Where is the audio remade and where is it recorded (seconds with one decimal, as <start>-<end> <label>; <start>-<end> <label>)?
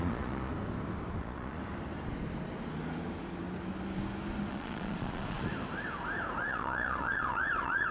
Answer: 0.0-0.5 remade; 0.5-1.2 recorded; 1.2-1.6 remade; 1.6-4.5 recorded; 4.5-5.5 remade; 5.5-6.4 recorded; 6.4-7.9 remade